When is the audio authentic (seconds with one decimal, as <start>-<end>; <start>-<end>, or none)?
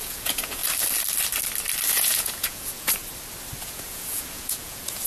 0.6-1.9; 3.0-3.6